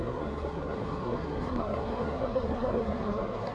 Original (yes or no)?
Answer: no